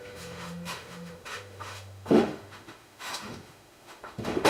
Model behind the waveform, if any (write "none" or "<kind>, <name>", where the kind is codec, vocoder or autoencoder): autoencoder, DAC-VAE